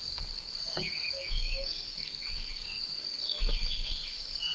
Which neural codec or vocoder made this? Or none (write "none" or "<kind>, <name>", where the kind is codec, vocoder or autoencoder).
codec, SNAC